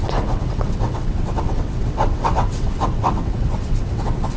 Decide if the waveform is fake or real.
fake